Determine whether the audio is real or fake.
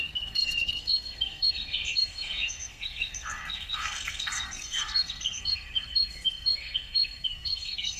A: fake